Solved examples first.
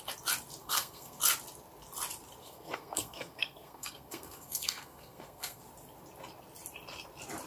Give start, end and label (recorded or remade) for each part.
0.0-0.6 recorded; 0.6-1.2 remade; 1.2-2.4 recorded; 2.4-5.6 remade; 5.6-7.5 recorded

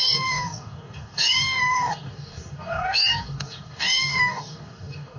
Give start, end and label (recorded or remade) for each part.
0.0-5.2 remade

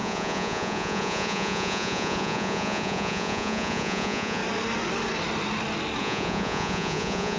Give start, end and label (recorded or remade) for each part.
0.0-4.4 remade; 4.4-6.0 recorded; 6.0-7.4 remade

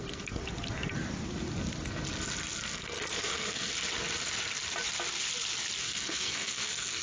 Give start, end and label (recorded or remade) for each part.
0.0-0.4 remade; 0.4-2.7 recorded; 2.7-3.7 remade; 3.7-5.8 recorded; 5.8-7.0 remade

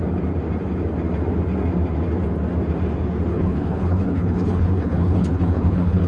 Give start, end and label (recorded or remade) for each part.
0.0-3.3 recorded; 3.3-6.1 remade

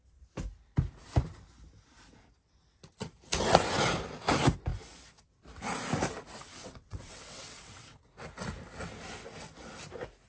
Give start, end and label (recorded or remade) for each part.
0.0-6.5 recorded; 6.5-8.0 remade; 8.0-10.3 recorded

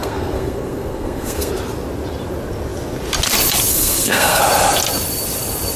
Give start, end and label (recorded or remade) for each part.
0.0-1.5 remade; 1.5-3.7 recorded; 3.7-4.4 remade; 4.4-5.8 recorded